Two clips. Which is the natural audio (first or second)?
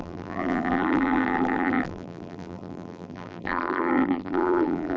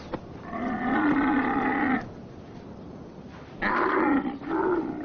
second